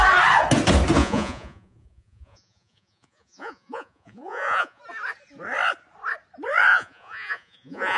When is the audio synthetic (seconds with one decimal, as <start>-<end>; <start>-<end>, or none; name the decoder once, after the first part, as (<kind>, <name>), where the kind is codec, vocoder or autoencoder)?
1.0-4.8 (vocoder, Vocos); 6.7-8.0